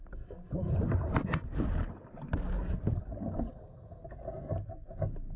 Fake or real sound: real